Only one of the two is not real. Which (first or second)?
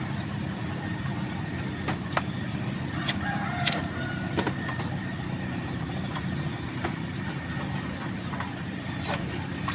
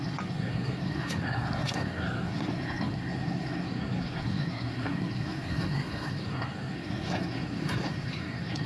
second